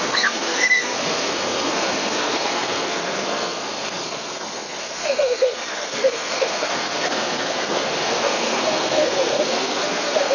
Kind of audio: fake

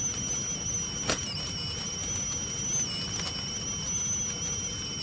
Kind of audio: real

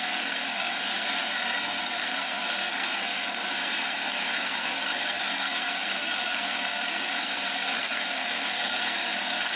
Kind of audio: fake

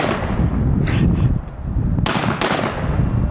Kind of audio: real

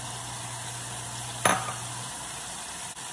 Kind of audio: real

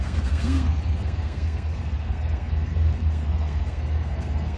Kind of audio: fake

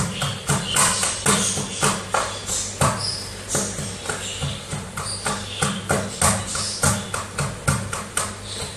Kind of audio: real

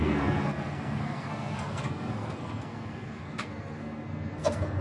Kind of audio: fake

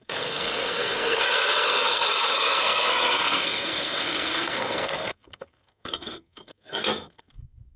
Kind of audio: fake